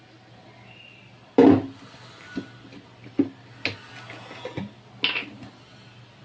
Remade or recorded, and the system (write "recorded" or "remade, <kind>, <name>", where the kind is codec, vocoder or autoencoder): recorded